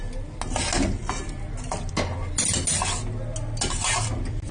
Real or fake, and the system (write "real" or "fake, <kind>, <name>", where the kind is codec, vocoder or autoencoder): real